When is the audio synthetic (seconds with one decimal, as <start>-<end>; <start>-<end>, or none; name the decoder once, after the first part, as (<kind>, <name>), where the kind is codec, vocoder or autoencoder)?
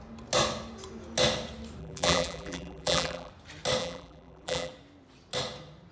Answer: 1.8-3.3 (vocoder, BigVGAN v2); 3.8-4.7